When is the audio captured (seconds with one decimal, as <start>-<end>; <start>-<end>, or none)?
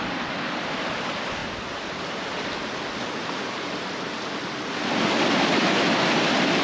0.0-6.6